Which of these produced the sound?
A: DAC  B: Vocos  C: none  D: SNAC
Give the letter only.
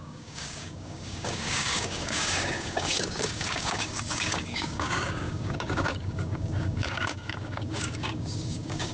A